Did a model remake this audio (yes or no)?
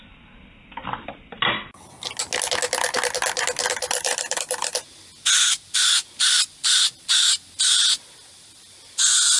no